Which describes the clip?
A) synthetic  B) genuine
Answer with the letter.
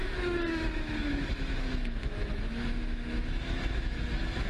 A